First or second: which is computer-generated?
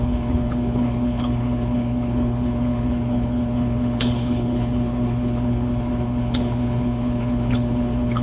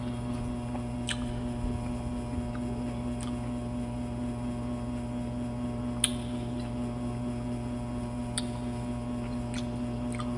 first